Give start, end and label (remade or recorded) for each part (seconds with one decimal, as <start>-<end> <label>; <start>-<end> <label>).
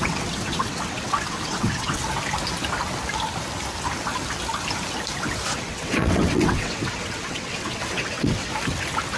0.0-2.0 remade; 2.0-5.6 recorded; 5.6-8.5 remade; 8.5-9.2 recorded